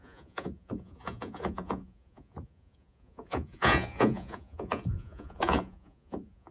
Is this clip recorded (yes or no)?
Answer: no